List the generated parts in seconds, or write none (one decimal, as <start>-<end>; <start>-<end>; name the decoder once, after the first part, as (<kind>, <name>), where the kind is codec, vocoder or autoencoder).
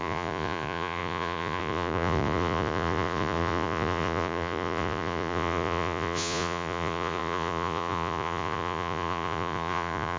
0.0-10.2 (vocoder, Vocos)